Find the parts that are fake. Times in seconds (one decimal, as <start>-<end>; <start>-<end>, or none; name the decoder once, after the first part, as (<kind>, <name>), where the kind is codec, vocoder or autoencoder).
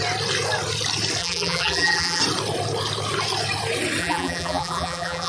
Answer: 1.2-2.2 (vocoder, BigVGAN v2); 4.0-5.3